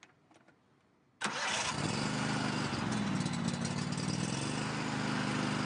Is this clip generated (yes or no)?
no